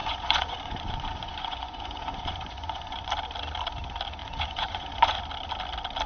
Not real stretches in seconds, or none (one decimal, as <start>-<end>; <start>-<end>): 0.0-3.1; 4.2-5.2